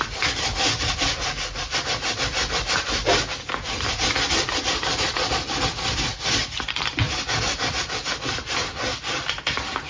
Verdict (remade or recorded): recorded